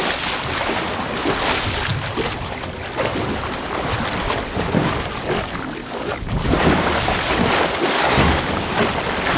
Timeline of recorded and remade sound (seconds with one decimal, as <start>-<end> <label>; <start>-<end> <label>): 0.0-5.8 recorded; 5.8-8.7 remade; 8.7-9.4 recorded